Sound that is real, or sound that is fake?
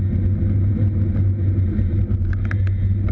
real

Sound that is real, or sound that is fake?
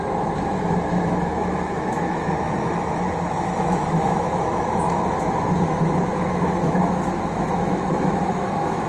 fake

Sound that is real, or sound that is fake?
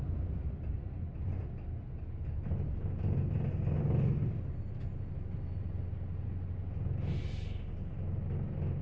real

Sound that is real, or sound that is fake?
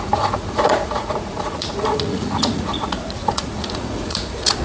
fake